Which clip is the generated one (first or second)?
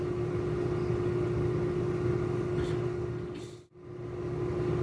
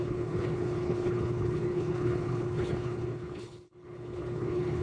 second